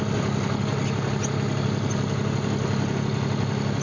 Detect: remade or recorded recorded